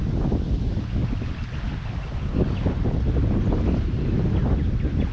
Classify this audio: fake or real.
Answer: real